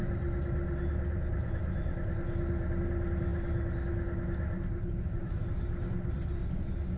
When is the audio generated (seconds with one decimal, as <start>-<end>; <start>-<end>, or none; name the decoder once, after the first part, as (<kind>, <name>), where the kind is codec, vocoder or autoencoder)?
none